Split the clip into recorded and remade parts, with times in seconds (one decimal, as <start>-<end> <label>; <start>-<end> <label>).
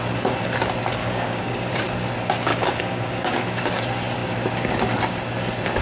0.0-1.0 recorded; 1.0-1.7 remade; 1.7-2.5 recorded; 2.5-3.6 remade; 3.6-5.8 recorded